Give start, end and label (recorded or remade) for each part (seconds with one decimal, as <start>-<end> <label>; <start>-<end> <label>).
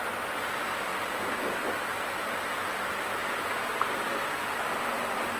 0.0-5.4 recorded